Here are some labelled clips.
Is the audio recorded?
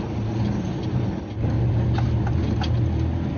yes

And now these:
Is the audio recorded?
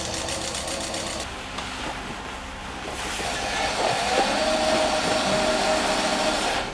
yes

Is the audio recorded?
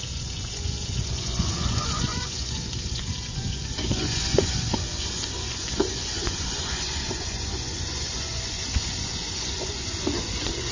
no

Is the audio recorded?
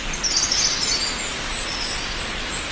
yes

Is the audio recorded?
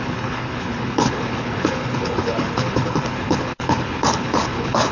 no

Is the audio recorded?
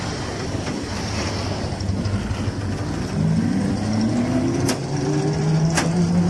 yes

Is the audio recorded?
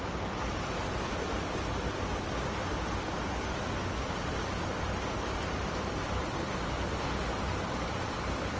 no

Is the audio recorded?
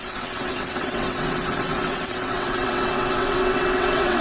no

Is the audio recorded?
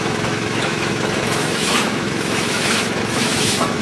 no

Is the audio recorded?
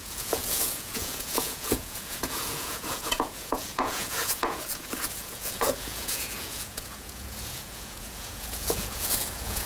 no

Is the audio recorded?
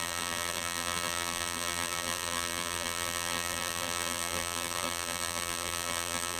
no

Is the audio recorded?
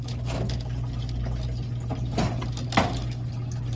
yes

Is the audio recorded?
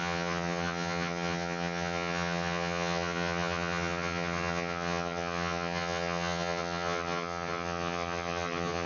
no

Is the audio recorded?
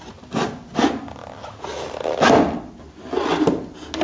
yes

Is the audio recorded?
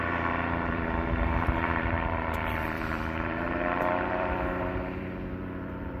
no